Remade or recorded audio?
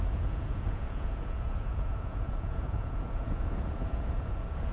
remade